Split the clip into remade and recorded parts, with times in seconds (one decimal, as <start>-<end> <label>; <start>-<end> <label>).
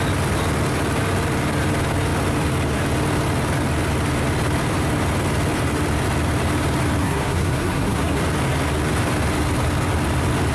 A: 0.0-7.0 recorded; 7.0-8.2 remade; 8.2-10.5 recorded